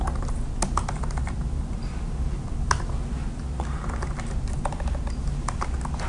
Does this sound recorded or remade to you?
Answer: recorded